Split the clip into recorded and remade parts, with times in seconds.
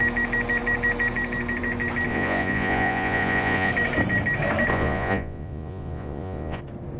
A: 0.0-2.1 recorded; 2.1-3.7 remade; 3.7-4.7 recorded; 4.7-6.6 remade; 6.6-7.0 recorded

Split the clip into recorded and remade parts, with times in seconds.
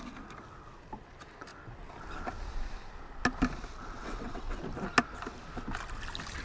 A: 0.0-4.0 recorded; 4.0-4.6 remade; 4.6-6.4 recorded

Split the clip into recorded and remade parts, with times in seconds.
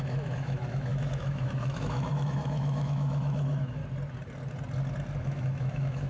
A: 0.0-3.8 remade; 3.8-5.2 recorded; 5.2-6.1 remade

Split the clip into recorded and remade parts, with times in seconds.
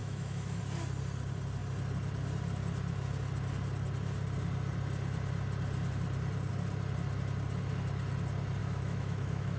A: 0.0-0.6 remade; 0.6-8.6 recorded; 8.6-9.6 remade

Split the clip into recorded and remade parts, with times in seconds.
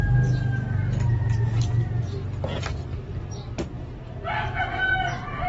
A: 0.0-2.9 recorded; 2.9-4.0 remade; 4.0-5.5 recorded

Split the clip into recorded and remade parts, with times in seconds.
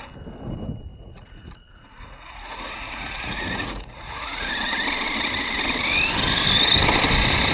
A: 0.0-0.9 recorded; 0.9-4.5 remade; 4.5-7.5 recorded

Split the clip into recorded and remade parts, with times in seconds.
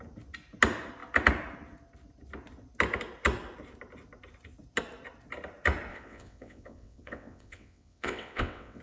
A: 0.0-5.9 recorded; 5.9-8.8 remade